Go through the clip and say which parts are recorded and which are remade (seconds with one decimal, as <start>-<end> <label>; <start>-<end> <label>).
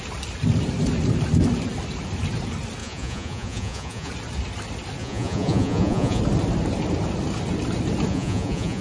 0.0-2.8 recorded; 2.8-4.1 remade; 4.1-5.0 recorded; 5.0-6.2 remade; 6.2-8.1 recorded; 8.1-8.8 remade